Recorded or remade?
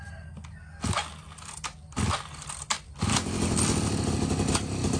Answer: recorded